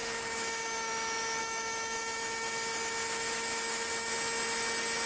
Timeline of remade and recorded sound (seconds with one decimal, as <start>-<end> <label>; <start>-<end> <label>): 0.0-0.9 remade; 0.9-1.4 recorded; 1.4-4.1 remade; 4.1-5.1 recorded